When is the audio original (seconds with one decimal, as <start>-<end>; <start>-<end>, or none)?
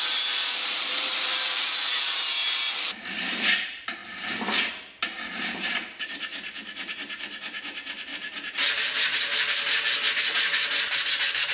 4.0-5.3; 6.3-6.9; 8.1-10.1